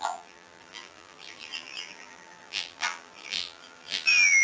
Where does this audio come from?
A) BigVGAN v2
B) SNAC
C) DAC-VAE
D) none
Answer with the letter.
A